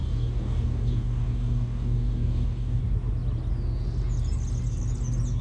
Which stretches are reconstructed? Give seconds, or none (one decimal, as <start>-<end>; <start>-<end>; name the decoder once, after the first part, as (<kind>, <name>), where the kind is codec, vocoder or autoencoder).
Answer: 0.0-2.8 (codec, DAC)